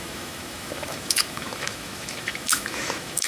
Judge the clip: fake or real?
fake